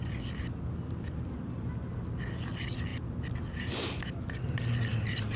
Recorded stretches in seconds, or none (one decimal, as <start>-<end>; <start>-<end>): 0.0-5.4